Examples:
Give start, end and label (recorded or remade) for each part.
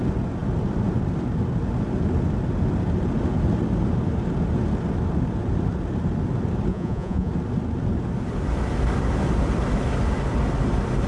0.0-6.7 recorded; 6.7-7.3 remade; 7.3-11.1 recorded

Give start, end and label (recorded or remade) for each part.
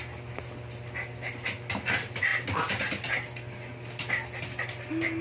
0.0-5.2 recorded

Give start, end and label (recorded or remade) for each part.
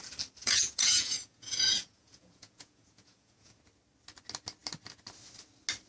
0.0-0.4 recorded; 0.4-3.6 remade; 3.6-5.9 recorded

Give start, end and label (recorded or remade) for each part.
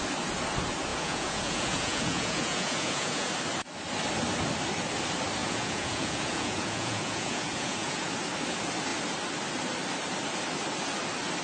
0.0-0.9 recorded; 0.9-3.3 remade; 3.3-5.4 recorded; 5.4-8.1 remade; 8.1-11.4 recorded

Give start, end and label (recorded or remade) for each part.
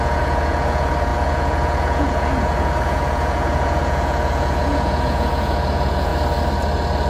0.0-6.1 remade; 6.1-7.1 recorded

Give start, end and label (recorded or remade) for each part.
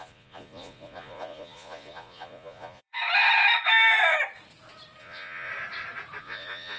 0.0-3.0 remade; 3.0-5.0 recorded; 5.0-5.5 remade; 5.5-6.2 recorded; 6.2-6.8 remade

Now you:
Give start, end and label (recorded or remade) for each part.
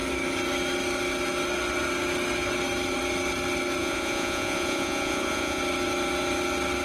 0.0-3.8 recorded; 3.8-5.6 remade; 5.6-6.8 recorded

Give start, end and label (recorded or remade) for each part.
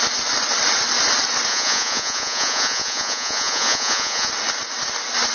0.0-1.5 recorded; 1.5-4.3 remade; 4.3-5.3 recorded